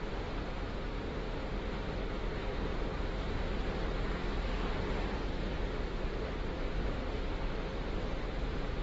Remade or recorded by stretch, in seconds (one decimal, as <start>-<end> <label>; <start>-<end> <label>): 0.0-2.9 recorded; 2.9-8.0 remade; 8.0-8.8 recorded